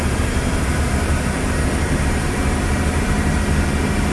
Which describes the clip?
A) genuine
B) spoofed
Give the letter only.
B